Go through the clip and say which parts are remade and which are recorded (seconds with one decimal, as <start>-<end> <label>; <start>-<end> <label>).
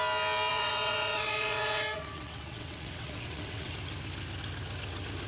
0.0-0.5 recorded; 0.5-3.7 remade; 3.7-5.3 recorded